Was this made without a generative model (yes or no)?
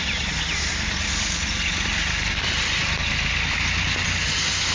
yes